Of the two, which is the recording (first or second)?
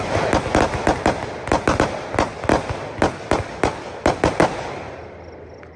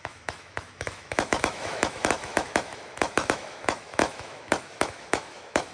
first